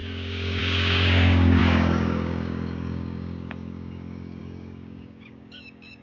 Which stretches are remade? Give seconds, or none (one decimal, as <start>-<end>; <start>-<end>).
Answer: 0.0-6.0